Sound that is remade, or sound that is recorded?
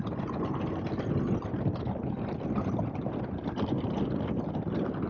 recorded